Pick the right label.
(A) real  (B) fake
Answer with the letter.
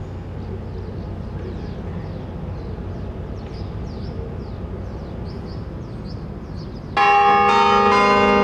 A